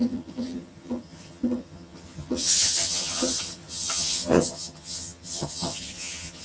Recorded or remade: remade